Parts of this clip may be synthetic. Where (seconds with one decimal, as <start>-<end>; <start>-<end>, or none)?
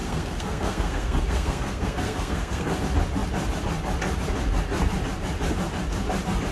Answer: 0.0-2.8